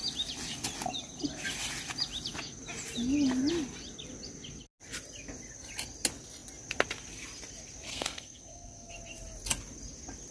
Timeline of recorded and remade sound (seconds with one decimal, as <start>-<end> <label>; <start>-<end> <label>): 0.0-7.9 recorded; 7.9-8.9 remade; 8.9-10.3 recorded